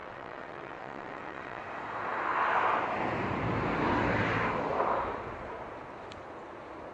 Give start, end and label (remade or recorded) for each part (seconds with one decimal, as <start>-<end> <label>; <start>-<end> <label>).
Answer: 0.0-1.6 remade; 1.6-6.9 recorded